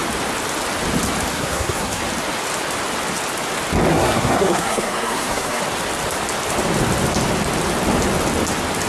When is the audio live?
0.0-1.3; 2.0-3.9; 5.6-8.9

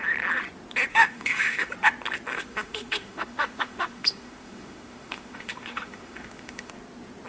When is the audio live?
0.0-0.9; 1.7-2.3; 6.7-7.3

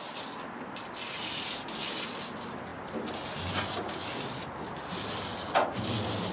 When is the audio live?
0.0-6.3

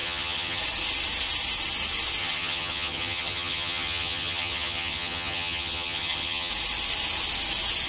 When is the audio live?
0.6-2.2; 6.5-7.9